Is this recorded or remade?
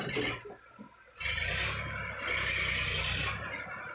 recorded